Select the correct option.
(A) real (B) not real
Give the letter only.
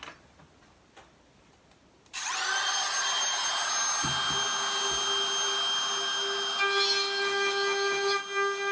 A